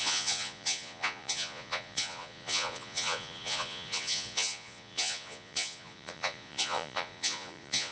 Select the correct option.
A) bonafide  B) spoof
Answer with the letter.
B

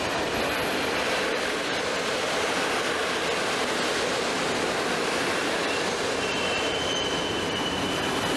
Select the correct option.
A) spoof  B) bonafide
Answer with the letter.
B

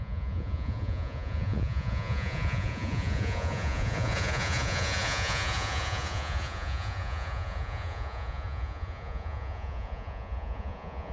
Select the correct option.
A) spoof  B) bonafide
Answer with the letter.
A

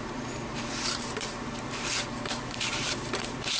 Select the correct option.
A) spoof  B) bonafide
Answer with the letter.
A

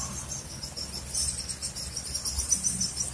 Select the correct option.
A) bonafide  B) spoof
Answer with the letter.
A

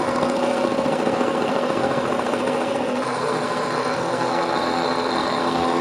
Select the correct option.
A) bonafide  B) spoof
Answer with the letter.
B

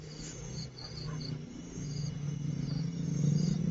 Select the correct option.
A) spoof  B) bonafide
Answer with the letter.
B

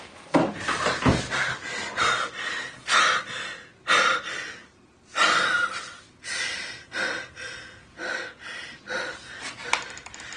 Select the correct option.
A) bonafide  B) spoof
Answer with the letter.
B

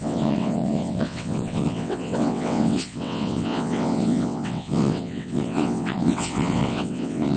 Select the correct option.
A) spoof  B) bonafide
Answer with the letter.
A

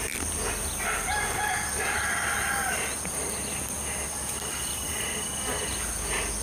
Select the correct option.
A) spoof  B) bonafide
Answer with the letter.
B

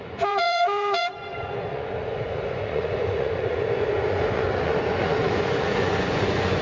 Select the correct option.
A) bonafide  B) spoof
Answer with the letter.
B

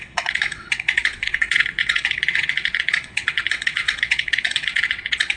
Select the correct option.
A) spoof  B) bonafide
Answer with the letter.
A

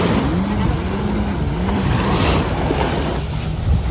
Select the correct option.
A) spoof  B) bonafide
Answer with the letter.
B